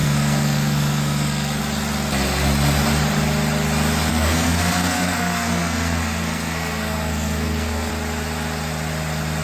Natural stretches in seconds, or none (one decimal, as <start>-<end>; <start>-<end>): 1.6-4.1; 7.9-9.4